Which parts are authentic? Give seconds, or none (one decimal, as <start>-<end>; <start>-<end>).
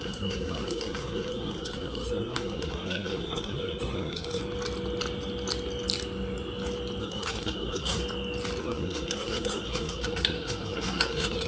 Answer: 4.4-7.0; 8.0-8.6